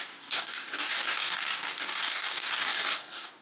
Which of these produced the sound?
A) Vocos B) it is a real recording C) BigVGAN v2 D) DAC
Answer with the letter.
D